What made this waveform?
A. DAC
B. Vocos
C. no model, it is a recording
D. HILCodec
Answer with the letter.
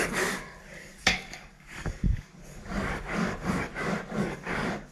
A